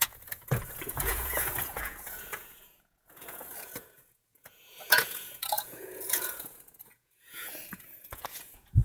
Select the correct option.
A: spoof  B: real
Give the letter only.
A